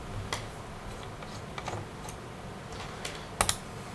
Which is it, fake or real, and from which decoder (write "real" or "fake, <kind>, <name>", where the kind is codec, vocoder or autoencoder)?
real